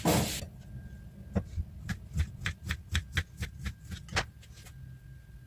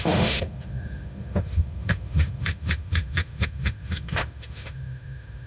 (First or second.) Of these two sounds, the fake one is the second